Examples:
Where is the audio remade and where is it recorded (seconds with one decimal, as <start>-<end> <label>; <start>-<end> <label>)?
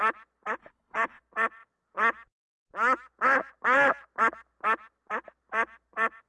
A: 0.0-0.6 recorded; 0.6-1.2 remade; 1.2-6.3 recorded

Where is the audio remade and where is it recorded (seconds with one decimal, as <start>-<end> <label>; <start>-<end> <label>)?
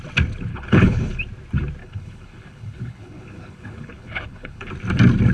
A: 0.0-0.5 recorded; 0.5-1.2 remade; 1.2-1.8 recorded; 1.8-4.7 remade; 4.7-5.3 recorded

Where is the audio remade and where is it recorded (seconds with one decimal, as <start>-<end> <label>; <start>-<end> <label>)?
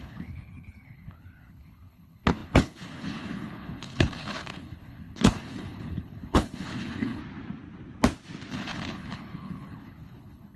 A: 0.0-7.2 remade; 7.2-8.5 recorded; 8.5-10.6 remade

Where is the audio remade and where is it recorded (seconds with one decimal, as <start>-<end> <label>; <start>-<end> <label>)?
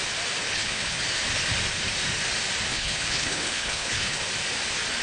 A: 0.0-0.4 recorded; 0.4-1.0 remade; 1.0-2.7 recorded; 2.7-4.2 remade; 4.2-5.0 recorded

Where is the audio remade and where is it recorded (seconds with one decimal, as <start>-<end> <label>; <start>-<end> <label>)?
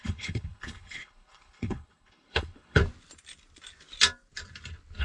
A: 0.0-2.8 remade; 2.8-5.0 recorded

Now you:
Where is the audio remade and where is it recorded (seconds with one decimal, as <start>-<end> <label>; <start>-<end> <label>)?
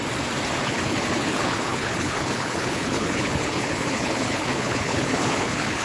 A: 0.0-0.6 recorded; 0.6-5.8 remade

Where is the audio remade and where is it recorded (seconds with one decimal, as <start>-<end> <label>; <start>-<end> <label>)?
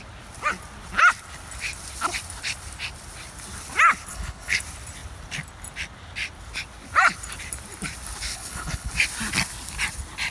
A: 0.0-4.1 recorded; 4.1-4.6 remade; 4.6-8.3 recorded; 8.3-8.9 remade; 8.9-10.3 recorded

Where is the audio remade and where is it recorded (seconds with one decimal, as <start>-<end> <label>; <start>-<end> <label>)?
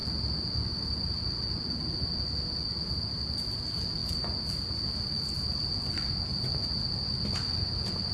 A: 0.0-8.1 recorded